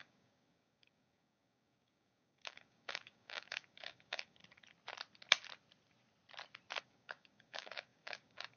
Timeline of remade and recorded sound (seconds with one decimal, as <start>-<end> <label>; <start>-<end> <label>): 0.0-4.4 remade; 4.4-6.8 recorded; 6.8-8.6 remade

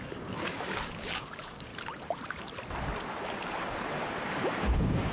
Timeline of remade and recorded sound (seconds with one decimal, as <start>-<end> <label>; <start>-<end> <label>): 0.0-1.7 remade; 1.7-4.3 recorded; 4.3-5.1 remade

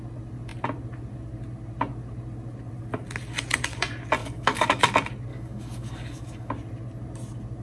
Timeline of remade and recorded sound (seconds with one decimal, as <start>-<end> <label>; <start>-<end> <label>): 0.0-4.2 recorded; 4.2-4.8 remade; 4.8-5.3 recorded; 5.3-6.5 remade; 6.5-7.6 recorded

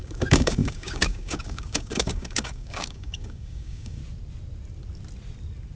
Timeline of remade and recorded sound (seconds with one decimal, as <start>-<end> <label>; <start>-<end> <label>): 0.0-4.0 remade; 4.0-5.8 recorded

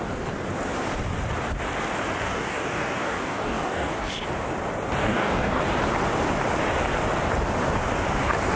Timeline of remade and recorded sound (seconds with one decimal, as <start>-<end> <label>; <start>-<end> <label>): 0.0-2.2 recorded; 2.2-4.1 remade; 4.1-5.0 recorded; 5.0-5.6 remade; 5.6-8.6 recorded

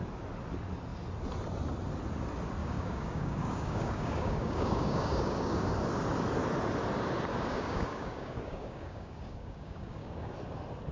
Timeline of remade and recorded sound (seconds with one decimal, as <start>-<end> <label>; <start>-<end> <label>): 0.0-2.6 recorded; 2.6-5.7 remade; 5.7-7.3 recorded; 7.3-10.3 remade; 10.3-10.9 recorded

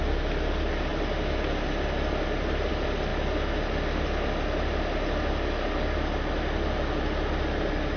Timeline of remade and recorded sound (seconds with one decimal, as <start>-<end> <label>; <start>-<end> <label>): 0.0-8.0 recorded